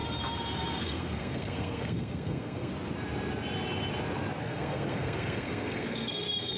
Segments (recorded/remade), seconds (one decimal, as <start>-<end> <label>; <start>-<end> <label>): 0.0-0.8 recorded; 0.8-2.7 remade; 2.7-4.4 recorded; 4.4-6.6 remade